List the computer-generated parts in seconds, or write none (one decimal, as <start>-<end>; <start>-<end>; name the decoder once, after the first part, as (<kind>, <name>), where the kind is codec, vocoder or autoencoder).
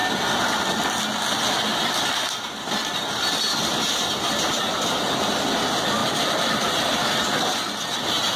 none